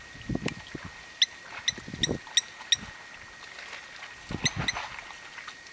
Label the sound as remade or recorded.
recorded